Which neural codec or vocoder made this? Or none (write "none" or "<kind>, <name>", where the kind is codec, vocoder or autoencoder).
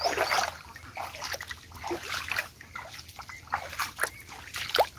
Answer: none